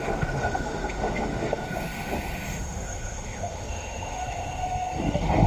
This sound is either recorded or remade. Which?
remade